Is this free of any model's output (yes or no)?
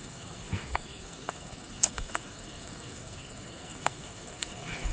no